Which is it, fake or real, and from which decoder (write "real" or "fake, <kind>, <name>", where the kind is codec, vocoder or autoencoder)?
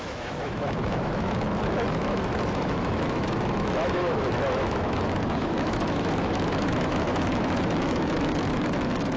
fake, autoencoder, DAC-VAE